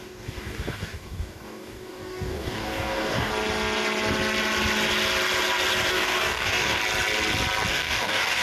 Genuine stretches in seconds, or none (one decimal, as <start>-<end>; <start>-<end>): 3.3-5.9; 6.8-7.7